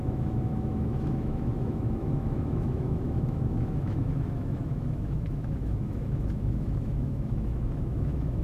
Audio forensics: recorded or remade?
remade